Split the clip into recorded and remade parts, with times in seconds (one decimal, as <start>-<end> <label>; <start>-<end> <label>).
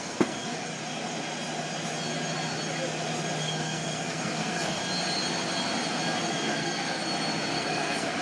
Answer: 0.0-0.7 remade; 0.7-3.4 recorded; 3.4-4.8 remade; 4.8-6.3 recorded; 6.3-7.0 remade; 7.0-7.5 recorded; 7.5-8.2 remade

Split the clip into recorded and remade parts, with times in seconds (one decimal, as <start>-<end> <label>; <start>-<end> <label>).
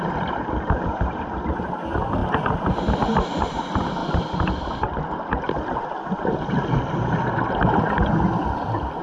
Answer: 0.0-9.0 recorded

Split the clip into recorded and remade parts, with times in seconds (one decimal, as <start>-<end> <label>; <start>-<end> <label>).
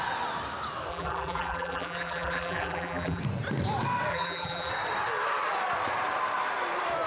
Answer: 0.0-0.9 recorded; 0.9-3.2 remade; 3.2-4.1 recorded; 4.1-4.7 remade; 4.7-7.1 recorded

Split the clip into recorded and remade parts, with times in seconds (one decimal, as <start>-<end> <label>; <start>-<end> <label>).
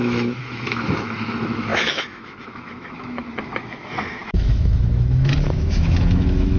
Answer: 0.0-6.6 remade